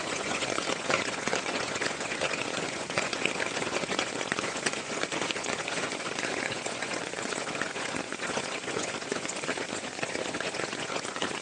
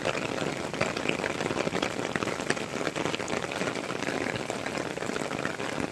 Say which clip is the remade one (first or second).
first